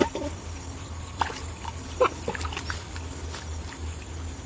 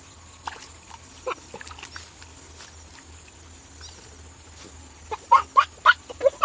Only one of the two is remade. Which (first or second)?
first